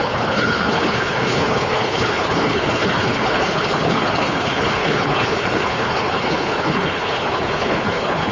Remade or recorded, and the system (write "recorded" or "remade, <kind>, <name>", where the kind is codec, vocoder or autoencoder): remade, codec, HILCodec